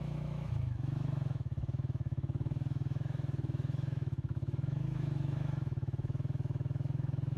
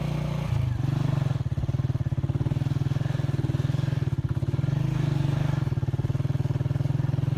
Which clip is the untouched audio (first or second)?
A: second